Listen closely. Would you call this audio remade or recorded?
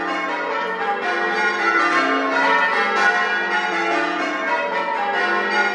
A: recorded